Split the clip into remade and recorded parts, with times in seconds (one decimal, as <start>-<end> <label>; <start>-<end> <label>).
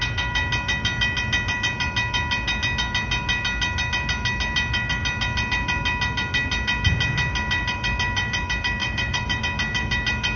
0.0-8.8 recorded; 8.8-9.4 remade; 9.4-10.4 recorded